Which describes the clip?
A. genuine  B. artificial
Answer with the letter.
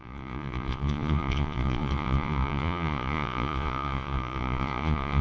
B